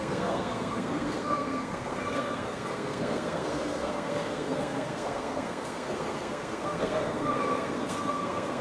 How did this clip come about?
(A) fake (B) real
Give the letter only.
A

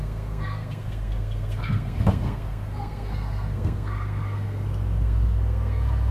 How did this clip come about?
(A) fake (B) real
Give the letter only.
A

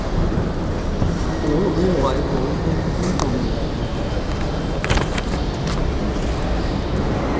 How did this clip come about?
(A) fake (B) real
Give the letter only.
B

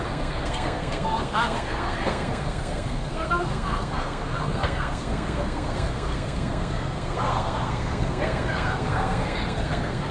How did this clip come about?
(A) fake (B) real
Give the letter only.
A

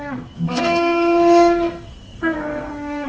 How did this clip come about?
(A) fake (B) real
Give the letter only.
A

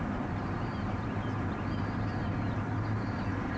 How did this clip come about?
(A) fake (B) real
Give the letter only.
B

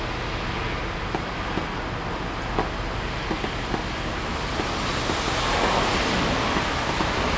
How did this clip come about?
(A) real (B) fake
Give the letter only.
A